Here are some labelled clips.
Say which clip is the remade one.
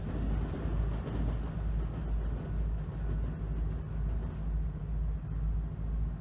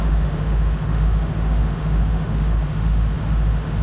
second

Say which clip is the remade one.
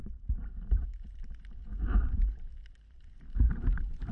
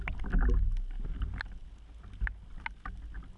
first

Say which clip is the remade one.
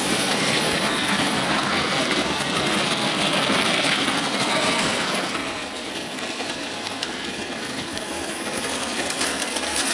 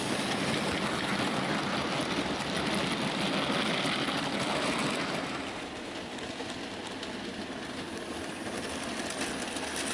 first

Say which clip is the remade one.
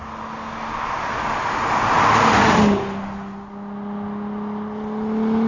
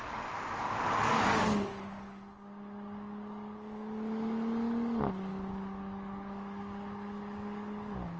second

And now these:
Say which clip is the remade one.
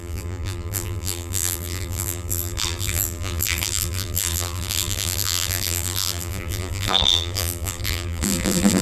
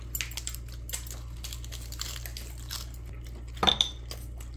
first